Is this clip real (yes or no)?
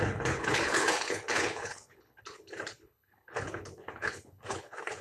no